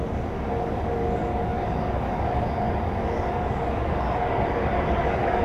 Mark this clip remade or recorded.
remade